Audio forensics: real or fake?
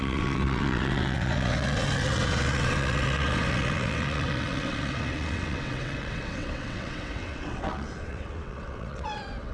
fake